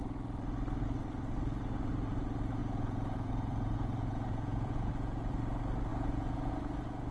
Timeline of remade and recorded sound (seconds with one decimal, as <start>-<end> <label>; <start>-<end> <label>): 0.0-2.6 recorded; 2.6-4.9 remade; 4.9-5.9 recorded; 5.9-6.5 remade; 6.5-7.1 recorded